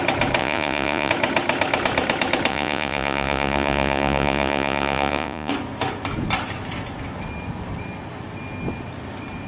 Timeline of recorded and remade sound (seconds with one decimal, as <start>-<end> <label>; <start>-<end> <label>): 0.0-0.4 recorded; 0.4-1.1 remade; 1.1-2.5 recorded; 2.5-5.5 remade; 5.5-9.5 recorded